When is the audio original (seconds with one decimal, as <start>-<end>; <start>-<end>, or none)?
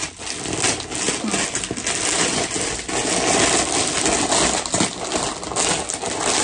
0.0-6.4